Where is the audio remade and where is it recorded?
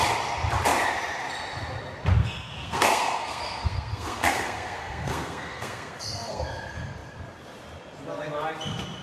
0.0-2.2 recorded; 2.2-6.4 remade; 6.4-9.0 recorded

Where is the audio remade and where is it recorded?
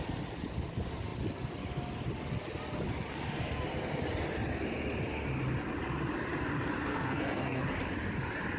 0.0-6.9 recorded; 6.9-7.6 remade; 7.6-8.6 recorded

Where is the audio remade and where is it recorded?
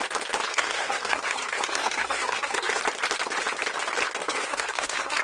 0.0-0.5 recorded; 0.5-2.8 remade; 2.8-4.2 recorded; 4.2-5.2 remade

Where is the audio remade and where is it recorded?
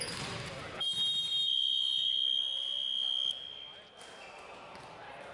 0.0-5.3 recorded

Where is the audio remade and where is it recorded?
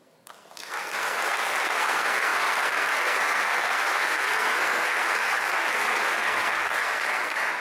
0.0-7.6 remade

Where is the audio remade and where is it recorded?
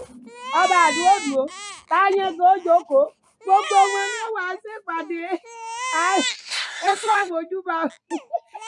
0.0-6.4 recorded; 6.4-7.3 remade; 7.3-8.7 recorded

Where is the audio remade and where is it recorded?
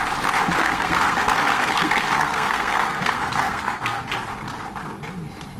0.0-0.6 recorded; 0.6-4.0 remade; 4.0-5.6 recorded